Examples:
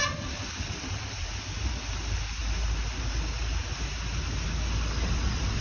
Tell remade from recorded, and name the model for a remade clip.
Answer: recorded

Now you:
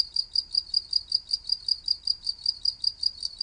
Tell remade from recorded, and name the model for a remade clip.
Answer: recorded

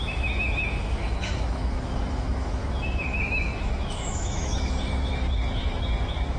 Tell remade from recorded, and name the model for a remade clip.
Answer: remade, autoencoder, DAC-VAE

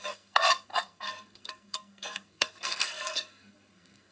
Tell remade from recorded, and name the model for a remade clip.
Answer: remade, codec, SNAC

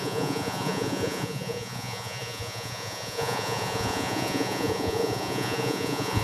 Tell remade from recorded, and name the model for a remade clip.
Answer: remade, vocoder, Vocos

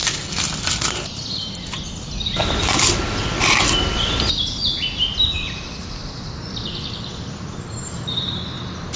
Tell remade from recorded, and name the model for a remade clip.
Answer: recorded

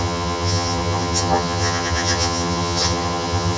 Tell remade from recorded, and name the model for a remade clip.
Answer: remade, vocoder, HiFi-GAN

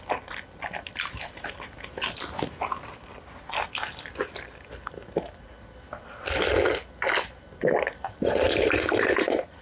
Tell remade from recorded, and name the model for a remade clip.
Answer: recorded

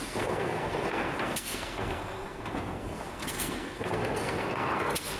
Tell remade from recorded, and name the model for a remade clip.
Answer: remade, codec, SNAC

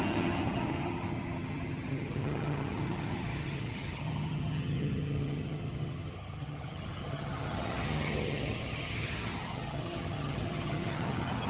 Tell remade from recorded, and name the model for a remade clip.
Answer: remade, vocoder, HiFi-GAN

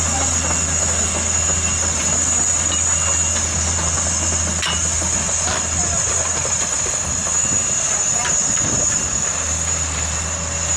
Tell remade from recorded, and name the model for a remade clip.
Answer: recorded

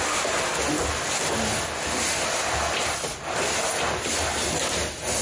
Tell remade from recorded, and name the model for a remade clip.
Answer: recorded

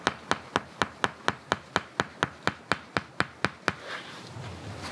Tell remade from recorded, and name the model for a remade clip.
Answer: recorded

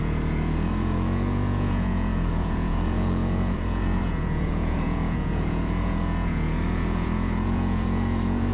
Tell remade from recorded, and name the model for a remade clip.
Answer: remade, vocoder, Vocos